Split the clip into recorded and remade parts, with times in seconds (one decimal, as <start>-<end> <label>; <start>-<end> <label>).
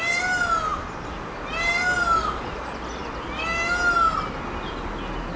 0.0-5.4 recorded